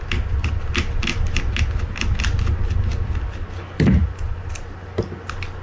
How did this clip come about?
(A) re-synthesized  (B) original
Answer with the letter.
B